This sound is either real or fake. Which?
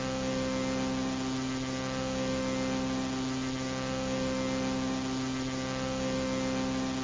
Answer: real